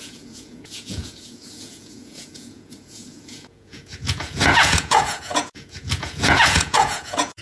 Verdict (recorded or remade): remade